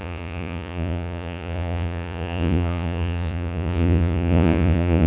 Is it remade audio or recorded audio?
remade